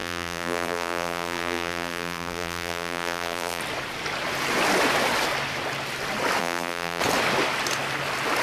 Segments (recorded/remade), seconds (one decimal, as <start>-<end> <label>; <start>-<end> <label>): 0.0-3.6 remade; 3.6-6.4 recorded; 6.4-7.0 remade; 7.0-8.4 recorded